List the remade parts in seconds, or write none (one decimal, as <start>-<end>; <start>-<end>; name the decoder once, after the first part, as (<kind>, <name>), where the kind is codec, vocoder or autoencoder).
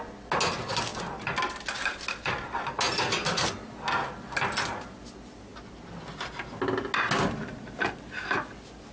none